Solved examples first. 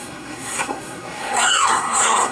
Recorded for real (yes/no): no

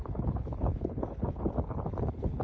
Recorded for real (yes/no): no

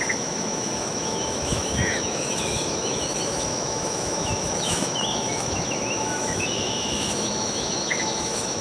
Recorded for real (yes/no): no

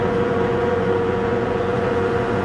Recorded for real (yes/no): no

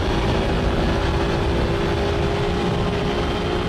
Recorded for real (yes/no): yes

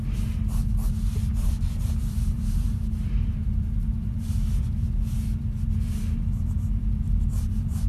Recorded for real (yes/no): no